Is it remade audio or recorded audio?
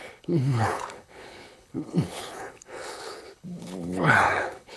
remade